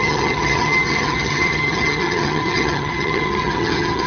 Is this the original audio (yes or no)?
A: no